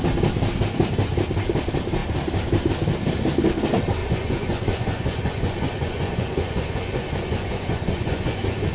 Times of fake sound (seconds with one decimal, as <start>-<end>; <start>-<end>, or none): 4.0-8.7